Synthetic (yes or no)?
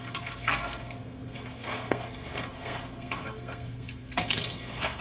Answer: yes